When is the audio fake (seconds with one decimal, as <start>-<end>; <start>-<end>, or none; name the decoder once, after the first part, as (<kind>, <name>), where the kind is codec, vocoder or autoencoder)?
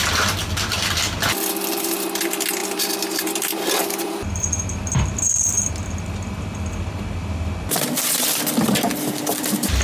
2.6-5.7 (vocoder, BigVGAN v2)